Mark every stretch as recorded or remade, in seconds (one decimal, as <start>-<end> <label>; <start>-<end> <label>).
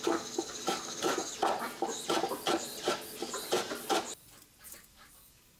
0.0-1.2 remade; 1.2-4.6 recorded; 4.6-5.6 remade